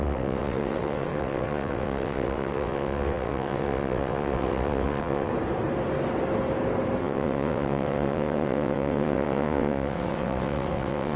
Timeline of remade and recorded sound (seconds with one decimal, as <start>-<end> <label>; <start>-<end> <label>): 0.0-5.3 remade; 5.3-7.0 recorded; 7.0-11.2 remade